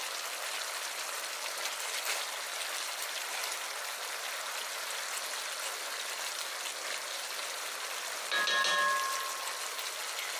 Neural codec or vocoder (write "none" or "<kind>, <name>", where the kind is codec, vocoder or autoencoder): none